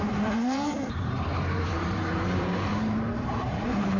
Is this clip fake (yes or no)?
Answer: yes